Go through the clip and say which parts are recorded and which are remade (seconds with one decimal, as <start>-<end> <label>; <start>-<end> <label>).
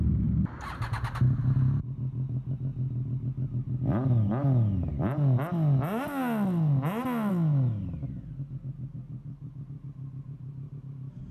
0.0-11.3 recorded